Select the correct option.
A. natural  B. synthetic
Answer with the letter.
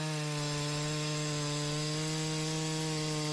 A